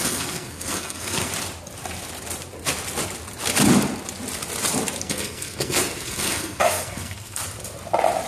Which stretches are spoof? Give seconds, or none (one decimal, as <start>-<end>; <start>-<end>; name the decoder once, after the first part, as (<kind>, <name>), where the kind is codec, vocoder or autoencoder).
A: 0.0-1.3 (codec, SNAC); 5.0-7.4